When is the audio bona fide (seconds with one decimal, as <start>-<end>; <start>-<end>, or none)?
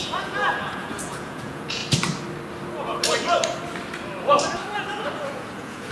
1.8-5.3